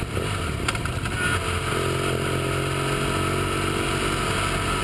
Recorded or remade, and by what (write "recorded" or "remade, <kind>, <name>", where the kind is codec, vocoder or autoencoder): recorded